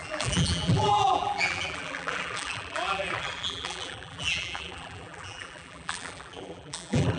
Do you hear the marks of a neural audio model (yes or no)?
yes